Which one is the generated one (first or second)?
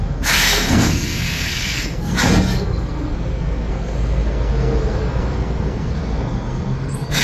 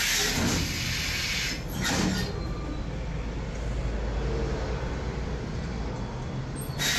first